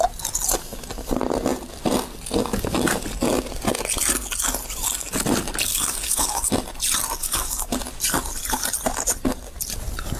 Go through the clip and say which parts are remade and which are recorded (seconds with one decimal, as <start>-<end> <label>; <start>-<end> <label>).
0.0-5.7 recorded; 5.7-6.5 remade; 6.5-7.2 recorded; 7.2-7.8 remade; 7.8-10.2 recorded